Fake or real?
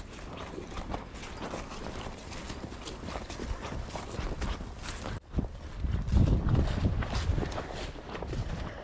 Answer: real